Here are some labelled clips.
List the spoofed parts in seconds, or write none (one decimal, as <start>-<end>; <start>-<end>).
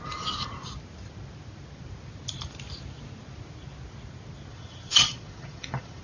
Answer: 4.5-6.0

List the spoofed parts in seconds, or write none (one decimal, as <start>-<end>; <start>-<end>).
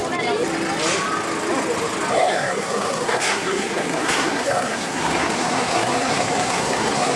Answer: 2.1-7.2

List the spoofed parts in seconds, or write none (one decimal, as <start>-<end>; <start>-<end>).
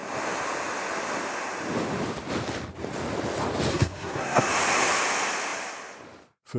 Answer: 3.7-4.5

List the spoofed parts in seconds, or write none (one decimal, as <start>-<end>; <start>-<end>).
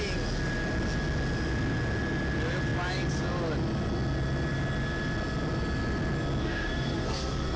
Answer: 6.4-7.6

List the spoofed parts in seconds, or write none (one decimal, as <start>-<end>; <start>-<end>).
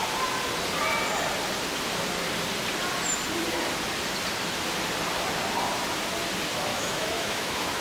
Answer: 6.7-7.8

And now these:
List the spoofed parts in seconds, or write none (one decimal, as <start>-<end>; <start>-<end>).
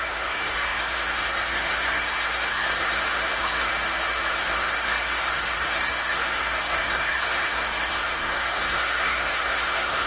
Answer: 0.0-3.7; 4.3-10.1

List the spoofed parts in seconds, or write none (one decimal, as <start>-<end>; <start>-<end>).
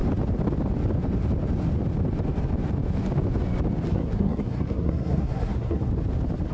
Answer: 3.9-5.9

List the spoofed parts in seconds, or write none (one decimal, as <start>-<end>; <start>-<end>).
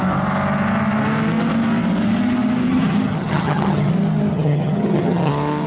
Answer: 2.7-3.9; 4.3-5.3